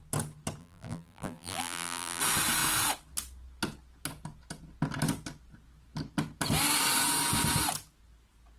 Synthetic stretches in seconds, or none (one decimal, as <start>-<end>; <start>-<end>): 0.6-2.2